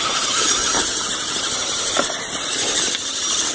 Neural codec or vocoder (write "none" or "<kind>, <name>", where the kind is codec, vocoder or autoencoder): none